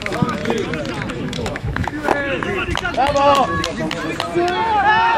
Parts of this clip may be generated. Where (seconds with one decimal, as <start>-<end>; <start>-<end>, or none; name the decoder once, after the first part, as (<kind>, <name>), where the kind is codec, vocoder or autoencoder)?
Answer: 0.0-0.4 (autoencoder, DAC-VAE); 1.1-2.1